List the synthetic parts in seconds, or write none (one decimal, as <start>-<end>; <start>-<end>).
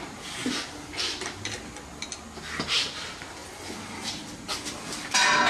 none